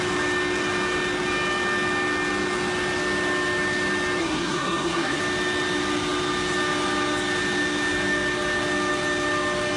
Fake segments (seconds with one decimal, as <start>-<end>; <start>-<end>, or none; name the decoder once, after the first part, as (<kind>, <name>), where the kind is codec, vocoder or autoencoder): 4.2-5.2 (codec, SNAC)